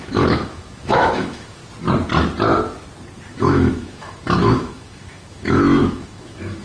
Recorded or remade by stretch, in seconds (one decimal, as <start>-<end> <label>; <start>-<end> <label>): 0.0-1.6 remade; 1.6-3.3 recorded; 3.3-6.6 remade

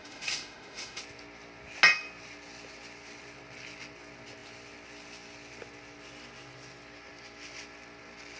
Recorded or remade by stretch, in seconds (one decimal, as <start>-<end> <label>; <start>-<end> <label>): 0.0-1.0 remade; 1.0-8.4 recorded

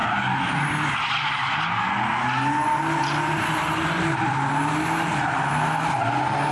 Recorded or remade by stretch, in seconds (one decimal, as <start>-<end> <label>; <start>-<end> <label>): 0.0-6.5 recorded

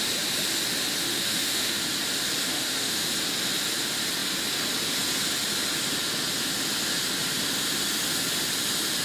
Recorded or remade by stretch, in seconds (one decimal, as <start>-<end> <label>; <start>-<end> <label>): 0.0-1.1 recorded; 1.1-1.8 remade; 1.8-2.5 recorded; 2.5-3.1 remade; 3.1-9.0 recorded

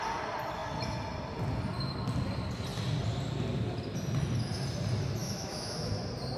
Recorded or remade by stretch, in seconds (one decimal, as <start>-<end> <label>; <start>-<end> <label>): 0.0-5.2 recorded; 5.2-5.9 remade; 5.9-6.4 recorded